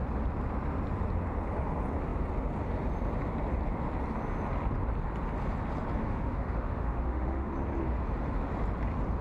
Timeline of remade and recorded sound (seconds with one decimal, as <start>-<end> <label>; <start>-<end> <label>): 0.0-6.0 recorded; 6.0-7.5 remade; 7.5-9.2 recorded